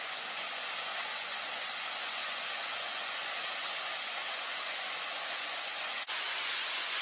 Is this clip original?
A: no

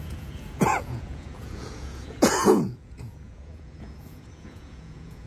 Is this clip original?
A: no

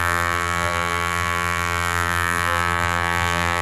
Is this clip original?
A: no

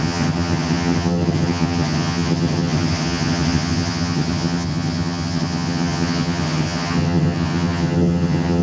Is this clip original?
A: no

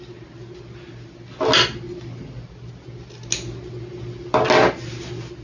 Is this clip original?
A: yes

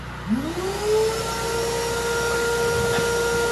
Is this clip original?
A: yes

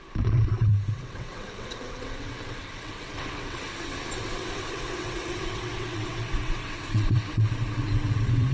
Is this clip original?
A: no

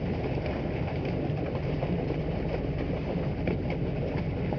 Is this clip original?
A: yes